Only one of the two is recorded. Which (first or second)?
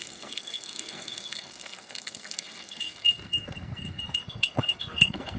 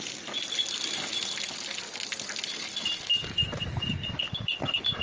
second